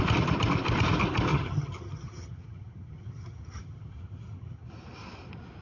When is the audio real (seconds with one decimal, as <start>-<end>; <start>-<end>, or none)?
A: 0.0-1.3; 4.7-5.6